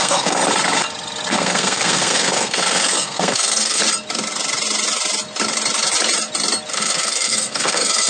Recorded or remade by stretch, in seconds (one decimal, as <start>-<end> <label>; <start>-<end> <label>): 0.0-0.4 remade; 0.4-1.3 recorded; 1.3-3.8 remade; 3.8-6.7 recorded; 6.7-8.1 remade